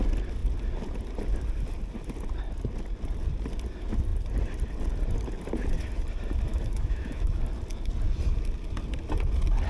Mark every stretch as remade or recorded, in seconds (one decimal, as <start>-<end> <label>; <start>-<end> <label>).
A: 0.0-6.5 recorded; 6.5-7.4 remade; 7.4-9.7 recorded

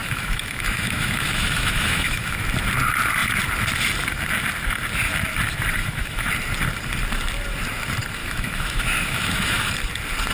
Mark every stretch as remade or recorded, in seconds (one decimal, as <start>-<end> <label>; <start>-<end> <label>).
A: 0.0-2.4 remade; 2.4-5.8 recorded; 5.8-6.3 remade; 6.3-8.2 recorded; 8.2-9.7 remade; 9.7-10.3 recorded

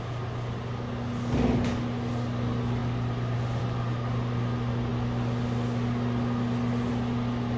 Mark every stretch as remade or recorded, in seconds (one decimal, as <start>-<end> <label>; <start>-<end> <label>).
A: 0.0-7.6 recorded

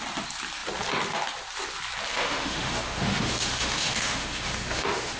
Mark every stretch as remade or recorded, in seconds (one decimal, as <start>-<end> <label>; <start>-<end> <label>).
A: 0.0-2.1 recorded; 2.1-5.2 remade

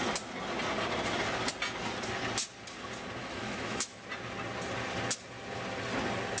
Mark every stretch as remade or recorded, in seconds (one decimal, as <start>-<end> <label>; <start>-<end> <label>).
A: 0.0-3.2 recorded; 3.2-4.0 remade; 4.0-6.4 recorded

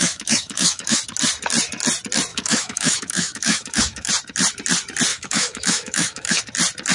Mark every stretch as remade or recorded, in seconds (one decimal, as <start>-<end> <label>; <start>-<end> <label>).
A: 0.0-1.0 remade; 1.0-2.3 recorded; 2.3-4.1 remade; 4.1-5.1 recorded; 5.1-6.4 remade; 6.4-6.9 recorded

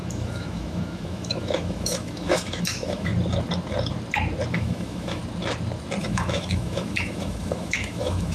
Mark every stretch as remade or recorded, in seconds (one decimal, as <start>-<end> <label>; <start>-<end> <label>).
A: 0.0-3.1 remade; 3.1-4.5 recorded; 4.5-5.2 remade; 5.2-6.0 recorded; 6.0-8.3 remade

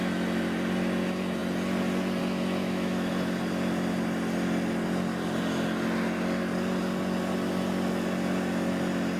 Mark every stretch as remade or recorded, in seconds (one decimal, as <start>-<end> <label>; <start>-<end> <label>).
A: 0.0-2.6 recorded; 2.6-3.1 remade; 3.1-9.2 recorded